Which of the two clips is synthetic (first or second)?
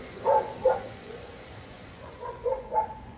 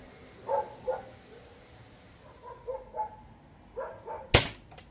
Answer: first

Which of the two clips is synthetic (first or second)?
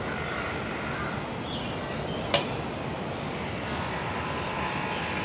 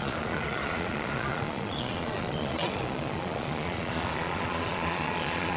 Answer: second